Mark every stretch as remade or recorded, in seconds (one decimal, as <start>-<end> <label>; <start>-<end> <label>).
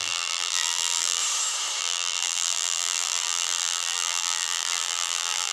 0.0-1.2 remade; 1.2-1.8 recorded; 1.8-5.5 remade